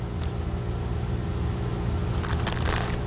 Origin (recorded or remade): recorded